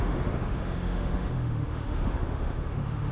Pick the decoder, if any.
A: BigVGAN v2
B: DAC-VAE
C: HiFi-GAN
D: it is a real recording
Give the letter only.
B